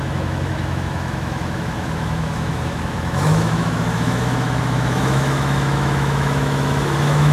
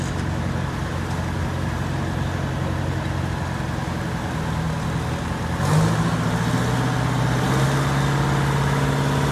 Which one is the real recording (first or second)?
second